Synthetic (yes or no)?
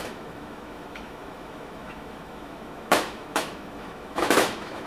yes